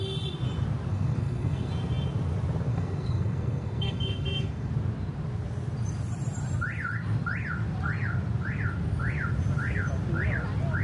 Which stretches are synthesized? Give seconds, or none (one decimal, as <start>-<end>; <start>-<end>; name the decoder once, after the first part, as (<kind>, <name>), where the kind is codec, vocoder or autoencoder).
0.9-1.7 (codec, SNAC); 2.7-4.7